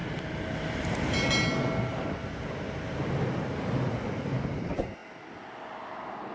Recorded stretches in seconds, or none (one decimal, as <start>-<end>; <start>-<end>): 0.0-6.3